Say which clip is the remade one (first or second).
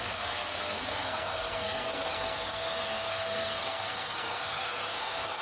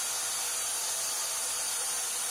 first